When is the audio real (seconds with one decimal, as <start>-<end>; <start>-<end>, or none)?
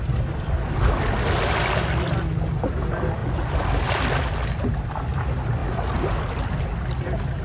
0.0-5.6; 6.6-7.4